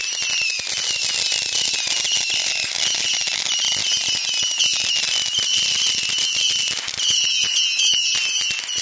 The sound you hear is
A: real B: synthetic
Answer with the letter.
A